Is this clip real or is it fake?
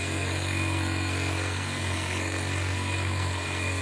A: fake